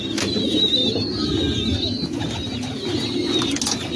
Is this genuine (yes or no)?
yes